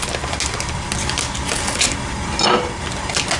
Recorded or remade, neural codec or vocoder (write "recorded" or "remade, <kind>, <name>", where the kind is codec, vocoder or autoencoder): recorded